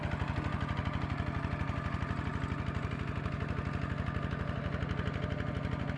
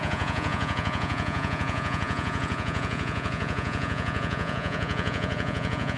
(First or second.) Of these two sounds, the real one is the first